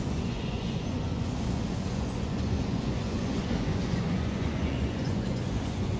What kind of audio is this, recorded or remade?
remade